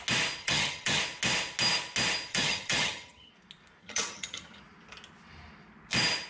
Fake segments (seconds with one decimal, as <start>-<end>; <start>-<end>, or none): 0.4-1.0; 2.3-3.3; 3.8-4.6